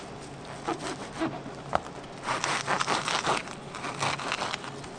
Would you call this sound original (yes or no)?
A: yes